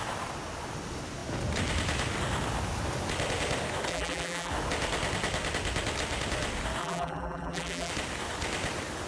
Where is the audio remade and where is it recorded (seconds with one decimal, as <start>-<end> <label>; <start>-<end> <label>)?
0.0-3.9 recorded; 3.9-4.5 remade; 4.5-6.8 recorded; 6.8-7.9 remade; 7.9-9.1 recorded